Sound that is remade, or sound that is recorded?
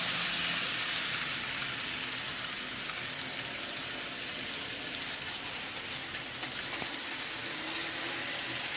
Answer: recorded